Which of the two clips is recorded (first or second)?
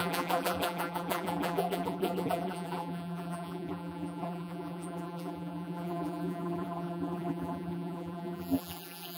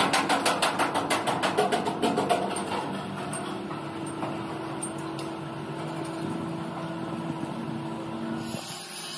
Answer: second